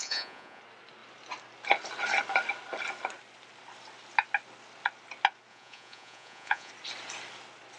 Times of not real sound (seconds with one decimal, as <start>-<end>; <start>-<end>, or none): 0.0-0.6; 5.5-6.7